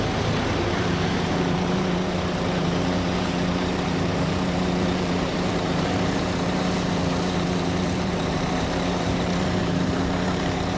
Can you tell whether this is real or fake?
fake